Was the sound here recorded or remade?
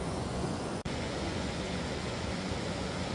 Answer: remade